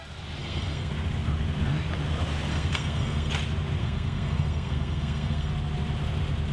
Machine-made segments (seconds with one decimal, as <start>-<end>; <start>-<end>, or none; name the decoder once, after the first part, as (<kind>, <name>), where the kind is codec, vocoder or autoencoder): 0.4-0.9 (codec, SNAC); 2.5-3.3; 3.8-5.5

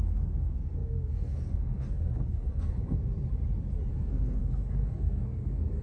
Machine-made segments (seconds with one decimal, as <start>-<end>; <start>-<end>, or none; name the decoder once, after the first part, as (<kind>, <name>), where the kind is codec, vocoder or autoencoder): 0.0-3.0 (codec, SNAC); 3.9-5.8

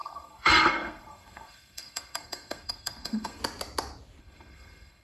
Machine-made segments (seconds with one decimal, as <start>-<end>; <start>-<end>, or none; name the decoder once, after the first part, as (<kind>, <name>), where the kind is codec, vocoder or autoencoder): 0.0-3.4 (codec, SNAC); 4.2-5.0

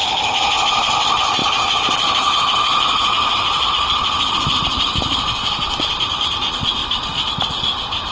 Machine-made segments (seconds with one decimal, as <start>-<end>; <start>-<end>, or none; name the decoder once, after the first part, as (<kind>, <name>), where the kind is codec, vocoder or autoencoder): none

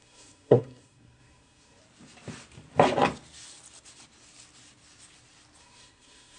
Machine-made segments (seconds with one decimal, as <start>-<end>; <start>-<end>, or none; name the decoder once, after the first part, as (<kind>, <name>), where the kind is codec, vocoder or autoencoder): 0.0-1.8 (codec, SNAC); 5.6-6.4